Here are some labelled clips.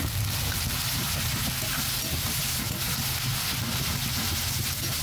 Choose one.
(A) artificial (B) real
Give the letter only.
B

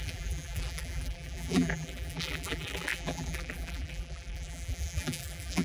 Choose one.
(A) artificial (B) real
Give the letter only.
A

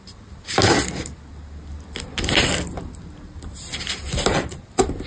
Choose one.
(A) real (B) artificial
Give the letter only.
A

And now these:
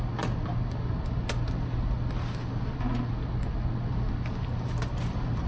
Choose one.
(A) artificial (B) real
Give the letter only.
B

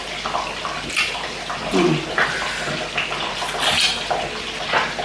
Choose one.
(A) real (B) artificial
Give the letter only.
A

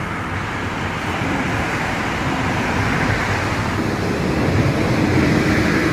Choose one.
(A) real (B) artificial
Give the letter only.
B